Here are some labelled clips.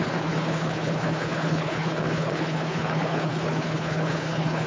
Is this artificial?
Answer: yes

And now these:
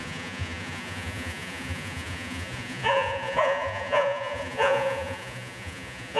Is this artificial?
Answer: yes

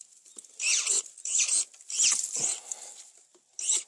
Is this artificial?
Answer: no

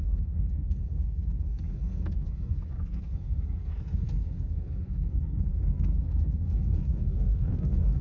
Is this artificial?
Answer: yes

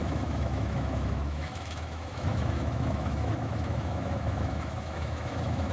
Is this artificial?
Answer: yes